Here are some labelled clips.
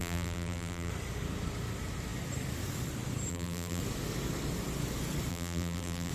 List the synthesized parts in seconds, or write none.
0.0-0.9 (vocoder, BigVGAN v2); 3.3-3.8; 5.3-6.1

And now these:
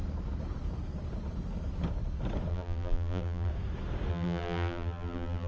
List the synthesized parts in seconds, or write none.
2.5-3.5 (vocoder, BigVGAN v2); 4.1-5.5

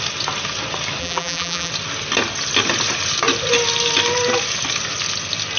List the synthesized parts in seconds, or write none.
1.0-1.7 (vocoder, BigVGAN v2)

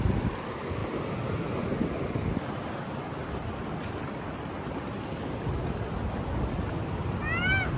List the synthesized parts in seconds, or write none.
none